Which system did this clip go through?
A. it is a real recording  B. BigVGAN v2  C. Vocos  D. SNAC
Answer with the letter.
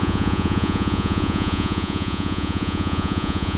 C